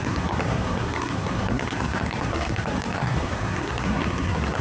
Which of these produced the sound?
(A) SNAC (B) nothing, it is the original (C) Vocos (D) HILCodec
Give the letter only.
A